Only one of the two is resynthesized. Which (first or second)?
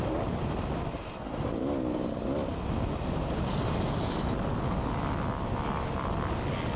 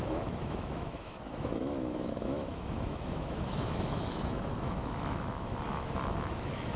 second